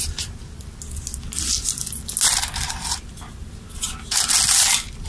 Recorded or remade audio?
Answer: recorded